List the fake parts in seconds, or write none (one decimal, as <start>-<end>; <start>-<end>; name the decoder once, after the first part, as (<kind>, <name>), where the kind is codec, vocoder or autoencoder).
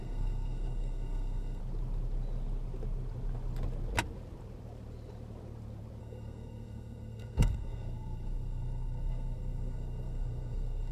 0.0-1.6 (codec, SNAC); 6.0-10.9